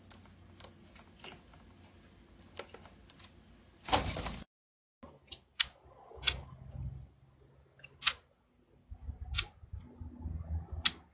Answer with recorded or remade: recorded